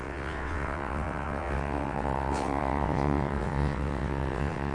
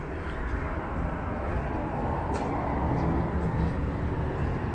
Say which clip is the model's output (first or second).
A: first